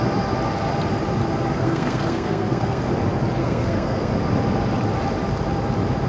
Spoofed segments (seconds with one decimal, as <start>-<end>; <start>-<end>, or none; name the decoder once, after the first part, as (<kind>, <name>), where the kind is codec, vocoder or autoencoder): 1.6-2.9 (codec, SNAC); 3.4-4.1